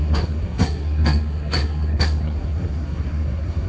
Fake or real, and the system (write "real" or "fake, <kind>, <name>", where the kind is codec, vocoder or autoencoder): fake, codec, SNAC